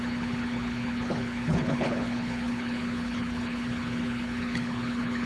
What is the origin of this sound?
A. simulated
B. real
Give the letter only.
A